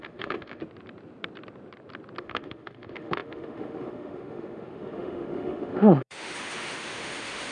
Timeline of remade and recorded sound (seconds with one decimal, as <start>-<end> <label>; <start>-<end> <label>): 0.0-0.6 remade; 0.6-2.2 recorded; 2.2-7.5 remade